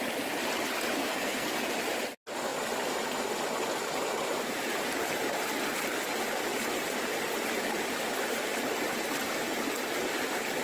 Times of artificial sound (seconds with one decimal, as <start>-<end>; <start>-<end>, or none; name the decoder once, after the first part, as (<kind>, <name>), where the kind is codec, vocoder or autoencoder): 1.0-1.5 (codec, SNAC)